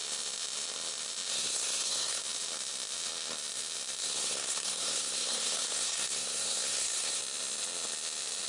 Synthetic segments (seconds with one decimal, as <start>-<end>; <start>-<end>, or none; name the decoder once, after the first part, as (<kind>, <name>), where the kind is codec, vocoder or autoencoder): 1.3-2.2 (codec, SNAC); 4.0-7.2